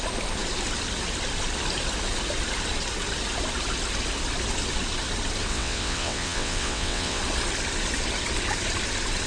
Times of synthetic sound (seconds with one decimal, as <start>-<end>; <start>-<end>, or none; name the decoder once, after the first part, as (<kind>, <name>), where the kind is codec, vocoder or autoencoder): 5.5-7.2 (vocoder, WaveNeXt)